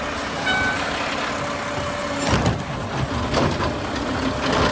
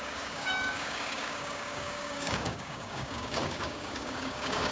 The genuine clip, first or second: first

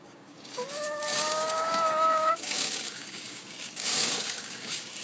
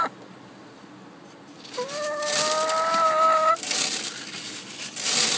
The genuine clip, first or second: second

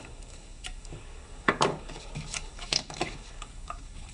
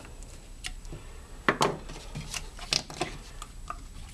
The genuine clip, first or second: second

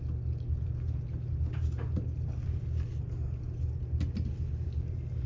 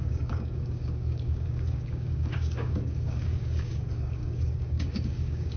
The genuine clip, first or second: first